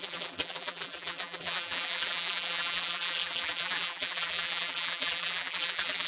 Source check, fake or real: fake